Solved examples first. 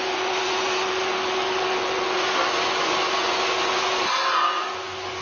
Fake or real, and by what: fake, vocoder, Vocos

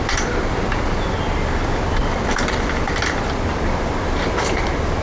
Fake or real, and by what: real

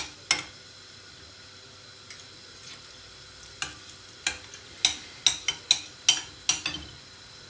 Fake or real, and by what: real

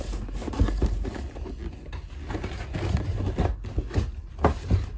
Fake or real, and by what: real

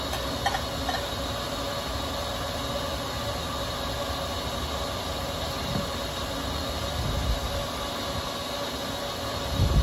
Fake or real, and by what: real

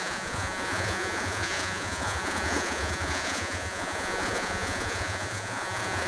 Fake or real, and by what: fake, vocoder, Vocos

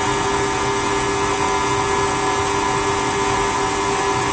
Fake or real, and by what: real